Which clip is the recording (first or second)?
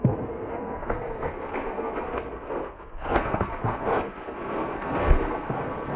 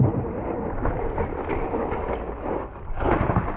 second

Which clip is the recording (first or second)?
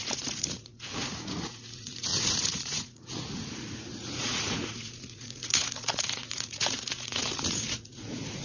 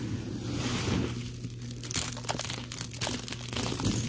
second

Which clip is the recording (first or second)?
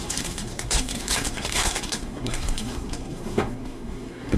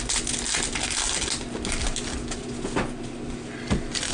second